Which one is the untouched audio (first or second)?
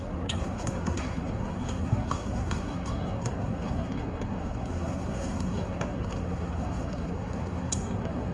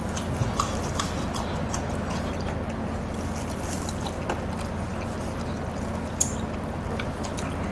second